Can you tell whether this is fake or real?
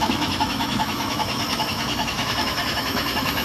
fake